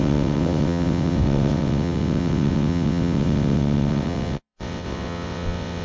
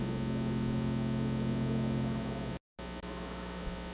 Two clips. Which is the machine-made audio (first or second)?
first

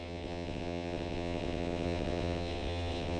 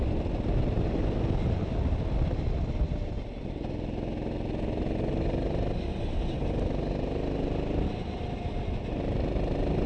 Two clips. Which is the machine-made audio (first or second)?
first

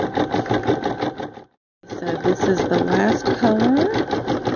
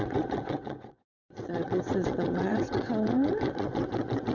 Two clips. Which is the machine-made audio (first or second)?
second